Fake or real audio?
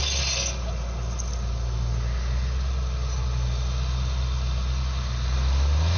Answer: real